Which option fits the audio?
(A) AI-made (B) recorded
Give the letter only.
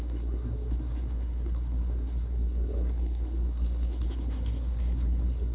A